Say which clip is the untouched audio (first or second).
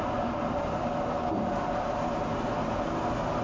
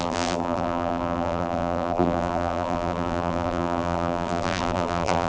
first